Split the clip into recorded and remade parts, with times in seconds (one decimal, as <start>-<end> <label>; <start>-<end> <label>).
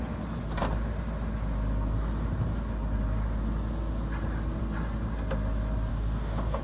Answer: 0.0-5.9 recorded; 5.9-6.6 remade